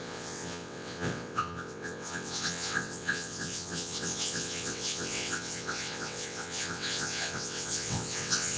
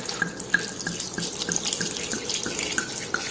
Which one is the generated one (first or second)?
first